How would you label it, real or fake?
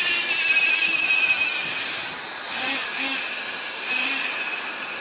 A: real